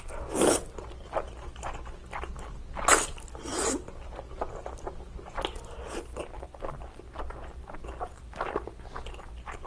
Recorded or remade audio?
recorded